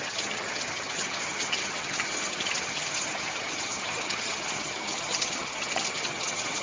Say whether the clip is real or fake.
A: fake